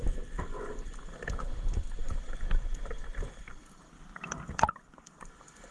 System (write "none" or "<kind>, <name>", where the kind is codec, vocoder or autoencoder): none